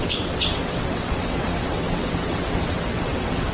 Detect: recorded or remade remade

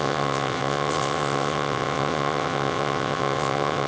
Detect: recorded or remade remade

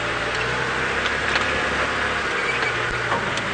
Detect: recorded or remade recorded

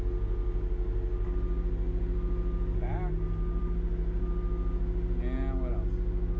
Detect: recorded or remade recorded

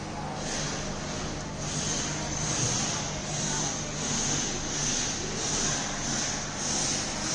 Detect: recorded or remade recorded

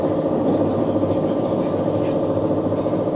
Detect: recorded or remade recorded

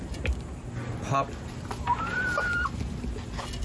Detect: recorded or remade recorded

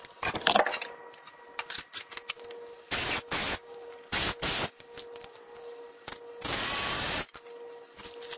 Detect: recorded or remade recorded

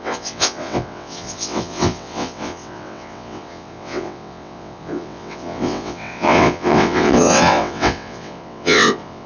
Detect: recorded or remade remade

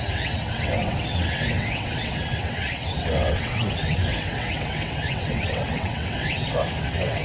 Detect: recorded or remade remade